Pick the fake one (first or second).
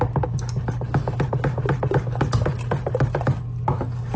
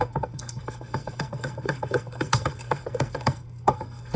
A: second